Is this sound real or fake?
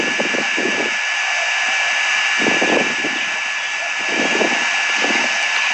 fake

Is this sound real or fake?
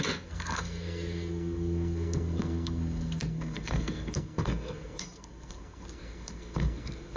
fake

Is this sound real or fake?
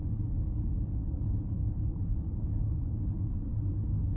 fake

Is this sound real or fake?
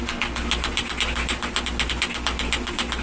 real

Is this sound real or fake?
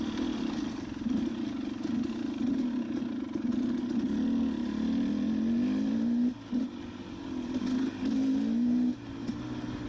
real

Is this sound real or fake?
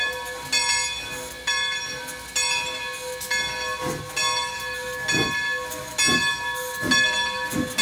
real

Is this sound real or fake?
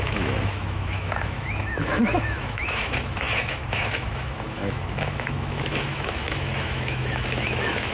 fake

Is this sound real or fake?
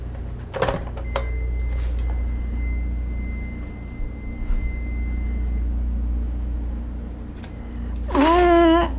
real